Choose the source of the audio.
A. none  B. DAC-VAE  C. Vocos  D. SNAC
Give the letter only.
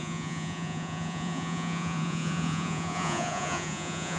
C